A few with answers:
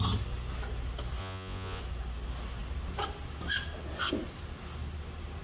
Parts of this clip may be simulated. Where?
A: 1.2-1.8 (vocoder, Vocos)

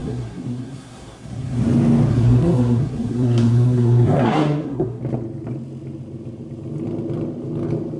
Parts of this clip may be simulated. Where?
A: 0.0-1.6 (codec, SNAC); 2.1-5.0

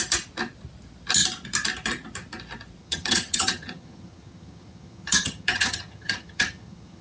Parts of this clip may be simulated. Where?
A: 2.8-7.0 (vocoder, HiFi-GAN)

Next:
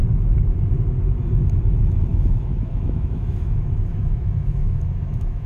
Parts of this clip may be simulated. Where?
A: 2.1-5.5 (autoencoder, DAC-VAE)